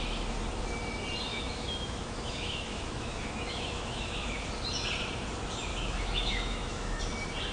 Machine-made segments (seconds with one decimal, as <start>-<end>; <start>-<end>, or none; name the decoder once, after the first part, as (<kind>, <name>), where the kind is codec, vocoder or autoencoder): 1.3-4.5 (autoencoder, DAC-VAE); 5.7-7.0